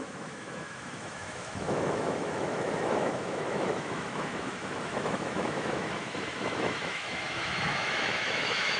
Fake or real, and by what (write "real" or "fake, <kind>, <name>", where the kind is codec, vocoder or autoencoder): fake, autoencoder, DAC-VAE